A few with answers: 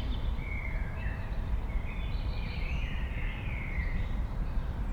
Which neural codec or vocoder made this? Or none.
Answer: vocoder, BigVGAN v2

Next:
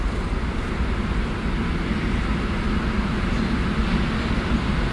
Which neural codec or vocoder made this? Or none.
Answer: none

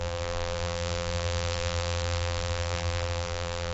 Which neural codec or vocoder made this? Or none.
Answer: vocoder, BigVGAN v2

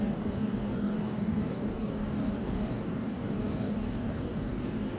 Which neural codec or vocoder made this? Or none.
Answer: codec, DAC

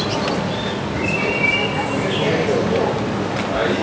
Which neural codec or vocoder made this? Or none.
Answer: none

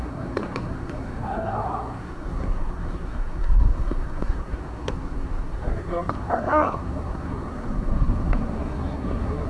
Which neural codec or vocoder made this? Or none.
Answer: codec, SNAC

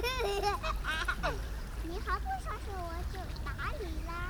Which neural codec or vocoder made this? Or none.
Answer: none